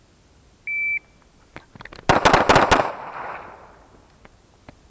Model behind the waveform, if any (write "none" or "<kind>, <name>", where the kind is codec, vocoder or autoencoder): none